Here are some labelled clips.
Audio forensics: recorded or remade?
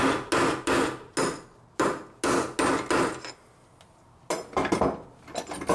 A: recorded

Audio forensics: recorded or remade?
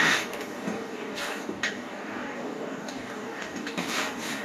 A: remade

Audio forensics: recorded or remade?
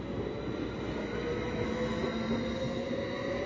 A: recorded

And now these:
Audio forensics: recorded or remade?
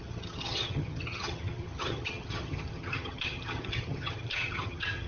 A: remade